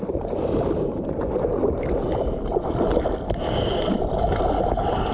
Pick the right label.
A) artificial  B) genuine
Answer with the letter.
B